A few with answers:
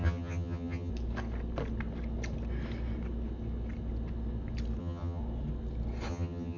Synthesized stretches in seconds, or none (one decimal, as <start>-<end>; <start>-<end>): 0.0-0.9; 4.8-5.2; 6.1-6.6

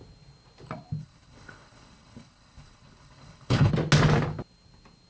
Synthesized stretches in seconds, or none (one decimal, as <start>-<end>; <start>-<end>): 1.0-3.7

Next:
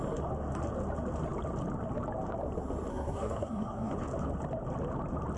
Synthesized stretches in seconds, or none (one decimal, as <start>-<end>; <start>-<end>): 2.9-3.9